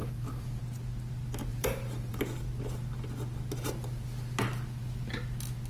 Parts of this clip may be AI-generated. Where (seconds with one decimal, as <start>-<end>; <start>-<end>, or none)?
0.0-0.6; 1.5-2.2